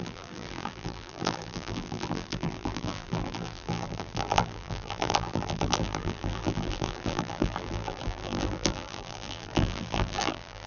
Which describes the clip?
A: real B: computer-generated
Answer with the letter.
B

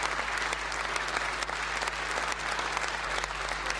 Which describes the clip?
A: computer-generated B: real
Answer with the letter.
B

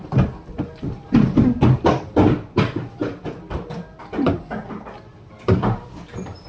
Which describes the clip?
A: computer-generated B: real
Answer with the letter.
A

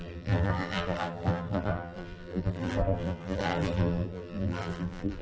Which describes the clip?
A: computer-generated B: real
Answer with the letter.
A